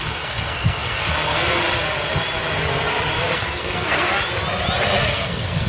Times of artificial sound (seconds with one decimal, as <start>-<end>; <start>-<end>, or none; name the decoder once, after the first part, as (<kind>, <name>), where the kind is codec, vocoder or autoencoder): 0.0-1.6 (codec, SNAC); 3.2-4.1; 5.0-5.7